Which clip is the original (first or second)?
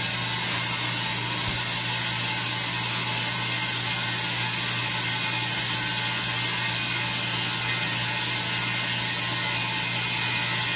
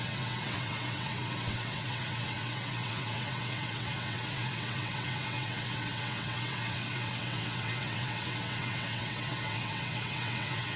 first